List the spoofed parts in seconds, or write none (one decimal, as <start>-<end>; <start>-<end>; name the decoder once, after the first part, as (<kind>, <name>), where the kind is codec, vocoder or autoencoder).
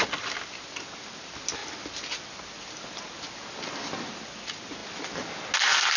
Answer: none